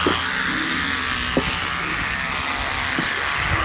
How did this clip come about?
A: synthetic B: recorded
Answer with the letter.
B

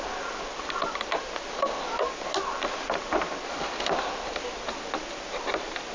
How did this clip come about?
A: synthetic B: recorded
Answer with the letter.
B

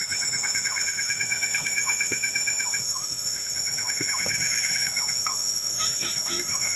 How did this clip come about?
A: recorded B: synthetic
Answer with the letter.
B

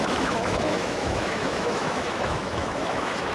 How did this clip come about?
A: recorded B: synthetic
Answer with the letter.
B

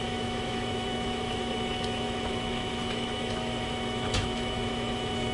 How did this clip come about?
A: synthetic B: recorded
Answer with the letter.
A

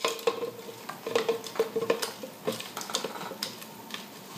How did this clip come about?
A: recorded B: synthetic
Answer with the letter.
A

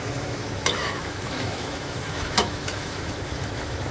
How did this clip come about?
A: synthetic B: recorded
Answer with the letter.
A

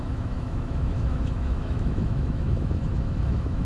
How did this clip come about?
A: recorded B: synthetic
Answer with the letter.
B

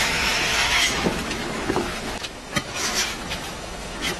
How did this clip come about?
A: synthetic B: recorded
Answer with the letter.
A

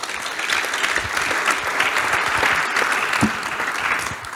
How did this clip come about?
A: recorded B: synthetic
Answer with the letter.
A